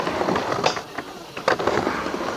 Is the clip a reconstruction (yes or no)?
no